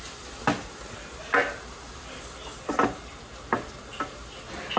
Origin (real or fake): real